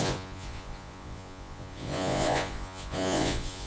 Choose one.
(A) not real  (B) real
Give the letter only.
A